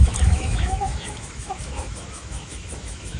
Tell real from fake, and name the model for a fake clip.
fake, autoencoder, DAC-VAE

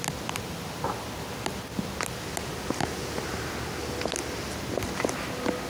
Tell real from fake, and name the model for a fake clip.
real